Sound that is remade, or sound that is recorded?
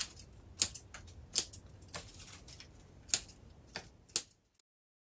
recorded